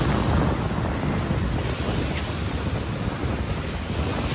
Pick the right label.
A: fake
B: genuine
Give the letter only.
B